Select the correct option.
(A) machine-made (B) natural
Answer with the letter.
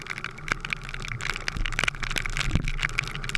B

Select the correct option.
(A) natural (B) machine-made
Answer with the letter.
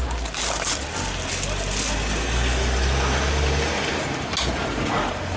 A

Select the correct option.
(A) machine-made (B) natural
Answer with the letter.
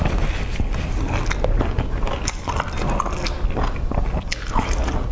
B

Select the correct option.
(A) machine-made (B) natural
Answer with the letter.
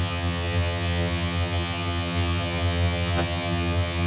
A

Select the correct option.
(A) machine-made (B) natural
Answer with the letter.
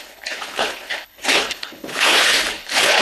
A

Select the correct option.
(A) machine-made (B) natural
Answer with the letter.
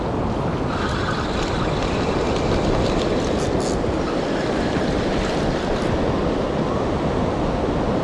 B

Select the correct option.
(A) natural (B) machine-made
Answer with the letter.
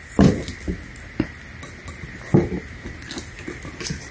A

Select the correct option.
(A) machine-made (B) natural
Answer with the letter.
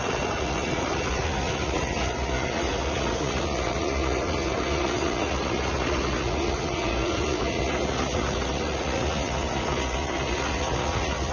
A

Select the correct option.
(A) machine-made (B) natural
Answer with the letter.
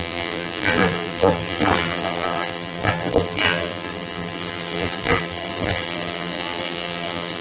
A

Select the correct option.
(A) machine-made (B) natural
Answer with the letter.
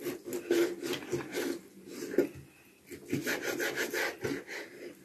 B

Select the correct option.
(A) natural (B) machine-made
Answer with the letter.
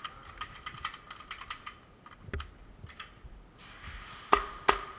A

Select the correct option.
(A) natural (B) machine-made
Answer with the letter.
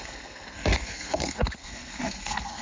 B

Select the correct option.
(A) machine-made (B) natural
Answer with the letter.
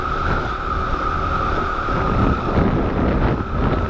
B